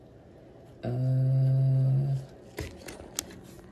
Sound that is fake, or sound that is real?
real